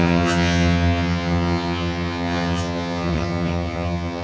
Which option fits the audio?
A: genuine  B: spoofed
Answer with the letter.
B